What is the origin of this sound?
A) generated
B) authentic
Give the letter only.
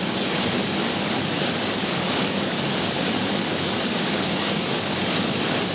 A